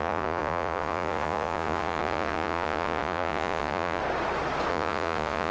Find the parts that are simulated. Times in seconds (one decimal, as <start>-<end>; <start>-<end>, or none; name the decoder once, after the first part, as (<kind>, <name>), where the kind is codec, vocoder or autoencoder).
0.0-4.0 (vocoder, Vocos); 4.7-5.5